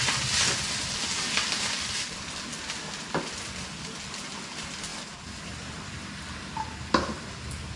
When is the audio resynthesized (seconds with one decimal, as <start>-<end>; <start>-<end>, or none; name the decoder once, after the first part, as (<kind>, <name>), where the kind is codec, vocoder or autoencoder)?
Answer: none